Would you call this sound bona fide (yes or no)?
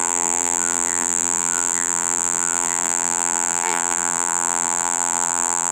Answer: no